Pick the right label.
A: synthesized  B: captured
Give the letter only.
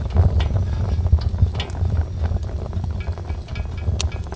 B